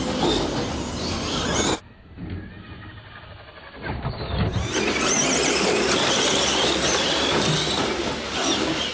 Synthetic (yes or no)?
no